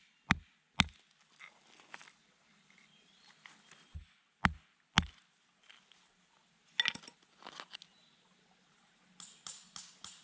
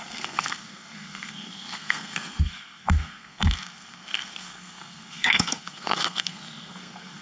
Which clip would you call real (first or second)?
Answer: first